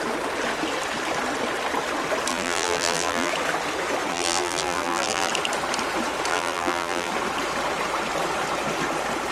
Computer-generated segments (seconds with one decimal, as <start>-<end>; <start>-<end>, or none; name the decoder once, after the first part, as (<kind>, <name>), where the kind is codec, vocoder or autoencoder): 2.3-3.3 (vocoder, BigVGAN v2); 4.1-5.3; 6.3-7.1